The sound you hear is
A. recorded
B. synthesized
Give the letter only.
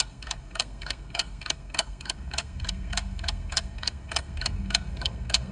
B